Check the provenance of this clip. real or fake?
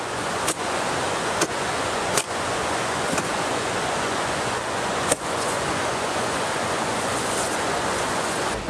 fake